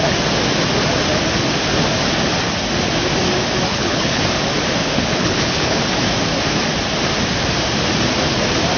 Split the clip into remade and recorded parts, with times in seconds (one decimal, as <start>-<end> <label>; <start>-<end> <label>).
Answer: 0.0-3.7 recorded; 3.7-4.2 remade; 4.2-4.8 recorded; 4.8-5.8 remade; 5.8-8.8 recorded